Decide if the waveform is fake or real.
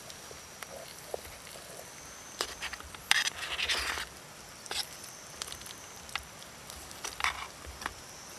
fake